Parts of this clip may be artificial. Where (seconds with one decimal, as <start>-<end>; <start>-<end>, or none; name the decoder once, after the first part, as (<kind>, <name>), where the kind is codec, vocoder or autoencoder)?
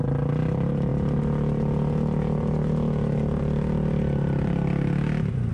none